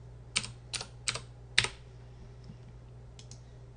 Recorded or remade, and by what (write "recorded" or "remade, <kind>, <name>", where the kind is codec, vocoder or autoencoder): recorded